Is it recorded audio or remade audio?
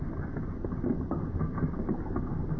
recorded